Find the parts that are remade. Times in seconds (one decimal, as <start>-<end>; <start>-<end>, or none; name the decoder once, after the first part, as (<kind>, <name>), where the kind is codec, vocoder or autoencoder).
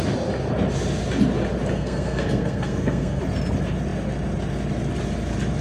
1.7-3.2 (codec, SNAC)